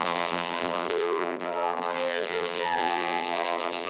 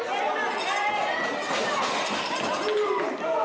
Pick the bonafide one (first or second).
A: second